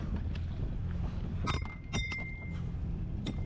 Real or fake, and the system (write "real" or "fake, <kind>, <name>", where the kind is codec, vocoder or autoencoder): real